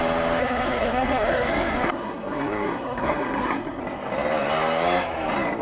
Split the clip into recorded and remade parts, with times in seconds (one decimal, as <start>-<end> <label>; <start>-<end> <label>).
0.0-0.4 recorded; 0.4-3.8 remade; 3.8-5.6 recorded